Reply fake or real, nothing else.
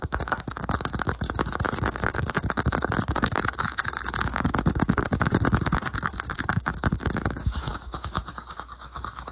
fake